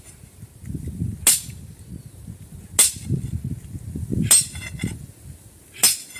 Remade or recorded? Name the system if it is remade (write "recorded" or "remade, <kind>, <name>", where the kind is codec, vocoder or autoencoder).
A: recorded